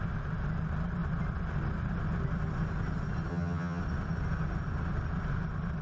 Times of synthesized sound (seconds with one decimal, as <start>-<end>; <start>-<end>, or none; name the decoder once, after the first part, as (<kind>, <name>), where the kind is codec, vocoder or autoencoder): 3.3-3.8 (vocoder, HiFi-GAN)